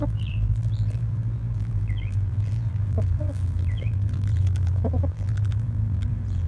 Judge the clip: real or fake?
fake